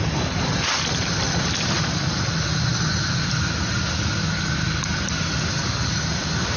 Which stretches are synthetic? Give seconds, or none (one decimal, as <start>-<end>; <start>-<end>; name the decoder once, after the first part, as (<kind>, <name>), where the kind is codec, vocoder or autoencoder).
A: none